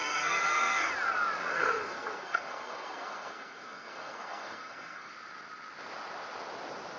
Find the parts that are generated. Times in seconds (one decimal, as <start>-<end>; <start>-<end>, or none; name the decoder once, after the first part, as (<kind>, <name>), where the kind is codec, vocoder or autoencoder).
0.0-0.9 (codec, SNAC); 1.5-5.1